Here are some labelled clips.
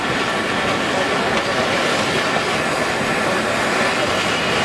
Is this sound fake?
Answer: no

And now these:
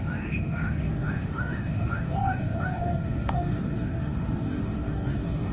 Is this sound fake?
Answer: yes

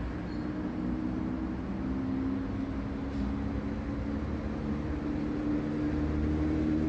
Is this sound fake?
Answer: no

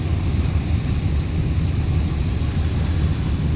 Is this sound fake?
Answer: no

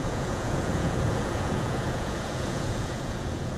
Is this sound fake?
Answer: yes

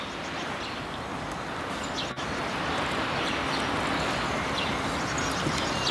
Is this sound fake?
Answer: no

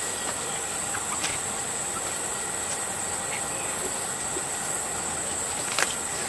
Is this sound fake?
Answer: no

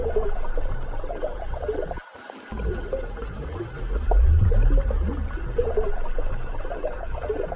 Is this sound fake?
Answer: no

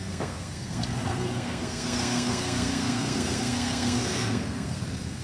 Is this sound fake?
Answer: yes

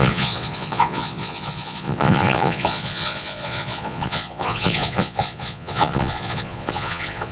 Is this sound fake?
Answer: yes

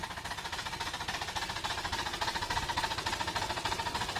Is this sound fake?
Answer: no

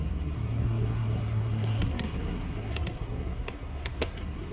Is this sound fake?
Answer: yes